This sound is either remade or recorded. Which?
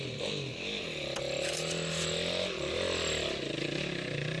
recorded